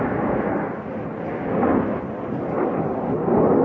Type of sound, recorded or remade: recorded